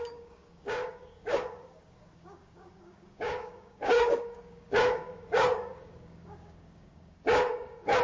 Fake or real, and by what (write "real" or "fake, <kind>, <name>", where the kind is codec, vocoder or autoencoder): fake, codec, DAC